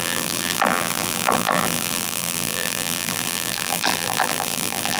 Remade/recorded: remade